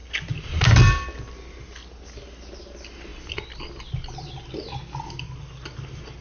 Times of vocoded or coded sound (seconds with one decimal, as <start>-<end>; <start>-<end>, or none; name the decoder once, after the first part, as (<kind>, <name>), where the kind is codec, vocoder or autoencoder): none